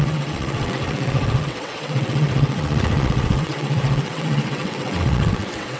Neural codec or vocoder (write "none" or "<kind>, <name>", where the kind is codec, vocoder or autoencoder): vocoder, WaveNeXt